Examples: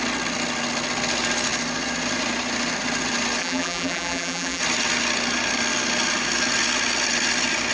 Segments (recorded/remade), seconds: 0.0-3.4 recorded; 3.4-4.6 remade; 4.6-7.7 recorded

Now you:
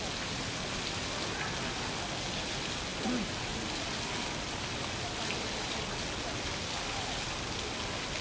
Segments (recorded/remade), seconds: 0.0-8.2 recorded

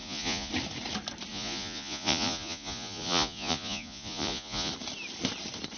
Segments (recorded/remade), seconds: 0.0-0.5 remade; 0.5-1.3 recorded; 1.3-4.7 remade; 4.7-5.8 recorded

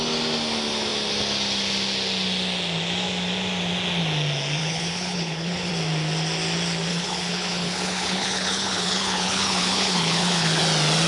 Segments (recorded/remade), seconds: 0.0-4.6 recorded; 4.6-5.7 remade; 5.7-6.9 recorded; 6.9-10.6 remade; 10.6-11.1 recorded